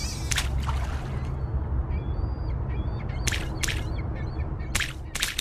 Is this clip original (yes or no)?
yes